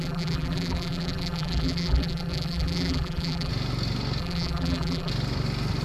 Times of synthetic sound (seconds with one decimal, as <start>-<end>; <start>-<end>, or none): 0.0-3.5; 4.2-5.1

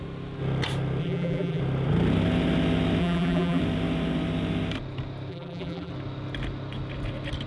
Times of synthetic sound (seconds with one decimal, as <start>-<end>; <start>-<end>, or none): 1.0-1.6; 3.0-3.6; 5.3-5.9

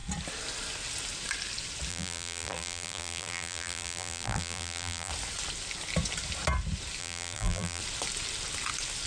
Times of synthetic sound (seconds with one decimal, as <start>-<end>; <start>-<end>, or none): 1.9-5.1; 7.0-7.8

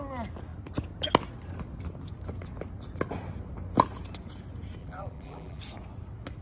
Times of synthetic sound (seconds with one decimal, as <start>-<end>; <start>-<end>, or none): 4.8-5.6

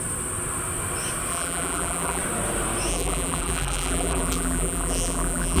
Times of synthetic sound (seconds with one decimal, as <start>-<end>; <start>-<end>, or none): 1.3-2.2; 2.9-5.6

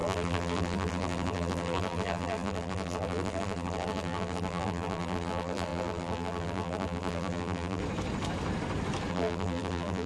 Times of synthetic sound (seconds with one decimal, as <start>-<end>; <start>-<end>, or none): 0.0-7.8; 9.1-10.1

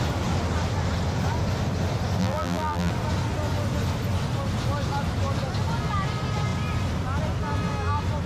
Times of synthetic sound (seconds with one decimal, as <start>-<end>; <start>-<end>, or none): 2.2-2.9